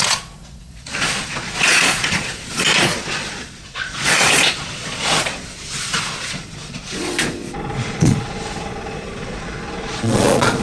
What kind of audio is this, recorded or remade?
remade